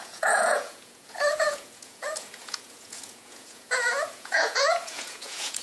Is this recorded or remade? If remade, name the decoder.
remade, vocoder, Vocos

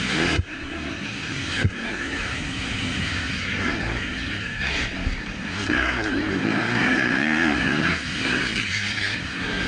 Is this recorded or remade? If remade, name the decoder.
remade, codec, SNAC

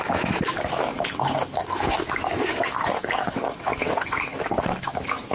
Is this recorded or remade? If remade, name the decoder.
remade, autoencoder, DAC-VAE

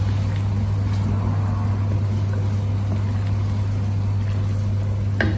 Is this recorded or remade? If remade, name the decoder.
recorded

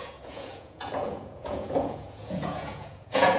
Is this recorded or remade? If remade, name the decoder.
remade, vocoder, Vocos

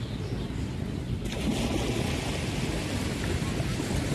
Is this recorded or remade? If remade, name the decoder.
recorded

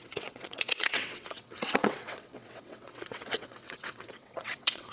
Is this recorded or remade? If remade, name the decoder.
remade, vocoder, WaveNeXt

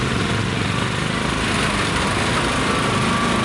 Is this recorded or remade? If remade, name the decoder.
recorded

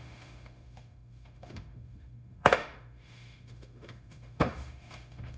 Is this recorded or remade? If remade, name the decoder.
remade, autoencoder, DAC-VAE